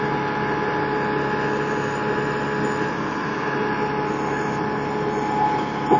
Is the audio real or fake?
real